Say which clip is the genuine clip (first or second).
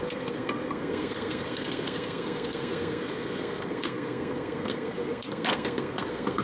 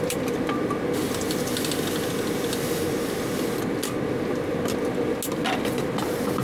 second